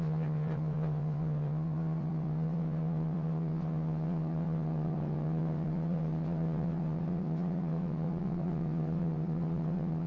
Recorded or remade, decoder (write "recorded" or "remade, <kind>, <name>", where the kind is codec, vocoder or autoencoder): remade, vocoder, WaveNeXt